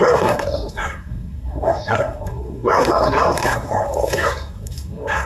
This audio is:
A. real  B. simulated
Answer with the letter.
B